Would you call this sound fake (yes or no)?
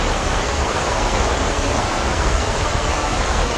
yes